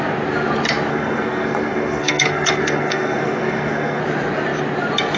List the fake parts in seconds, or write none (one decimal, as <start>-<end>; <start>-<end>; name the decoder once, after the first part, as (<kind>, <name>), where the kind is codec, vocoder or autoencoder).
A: 0.9-4.0 (codec, SNAC)